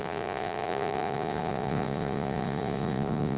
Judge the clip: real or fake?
fake